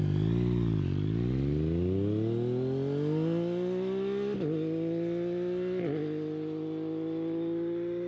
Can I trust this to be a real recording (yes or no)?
yes